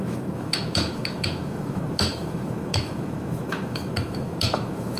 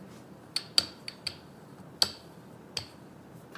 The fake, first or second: first